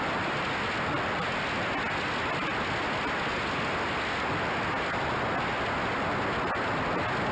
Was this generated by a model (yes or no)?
no